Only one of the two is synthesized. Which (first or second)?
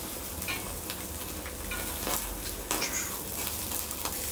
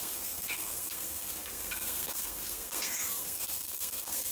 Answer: second